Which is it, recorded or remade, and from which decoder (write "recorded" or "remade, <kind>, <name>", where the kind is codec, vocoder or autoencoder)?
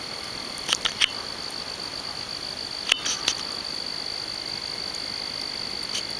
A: recorded